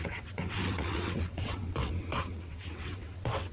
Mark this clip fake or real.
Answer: fake